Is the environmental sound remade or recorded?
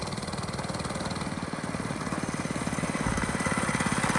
recorded